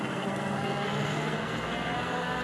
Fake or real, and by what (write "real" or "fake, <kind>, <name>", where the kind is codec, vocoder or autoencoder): fake, codec, SNAC